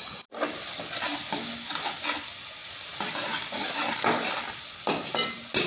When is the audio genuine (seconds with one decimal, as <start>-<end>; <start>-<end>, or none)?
0.0-5.7